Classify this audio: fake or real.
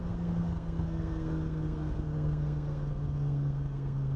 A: fake